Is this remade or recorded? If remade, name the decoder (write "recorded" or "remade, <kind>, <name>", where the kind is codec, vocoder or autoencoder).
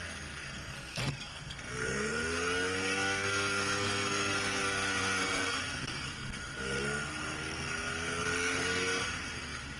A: remade, codec, SNAC